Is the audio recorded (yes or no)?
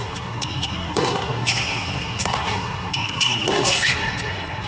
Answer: no